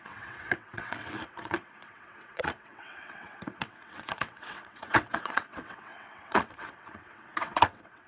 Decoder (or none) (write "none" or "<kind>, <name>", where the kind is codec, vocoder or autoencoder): vocoder, WaveNeXt